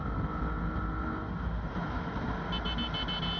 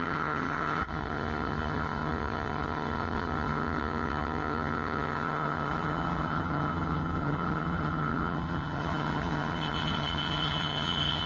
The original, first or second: first